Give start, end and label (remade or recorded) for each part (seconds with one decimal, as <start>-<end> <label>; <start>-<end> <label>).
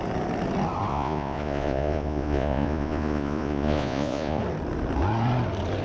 0.0-0.9 recorded; 0.9-4.4 remade; 4.4-5.8 recorded